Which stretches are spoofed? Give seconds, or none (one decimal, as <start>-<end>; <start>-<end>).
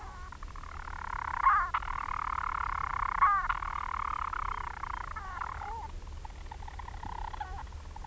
none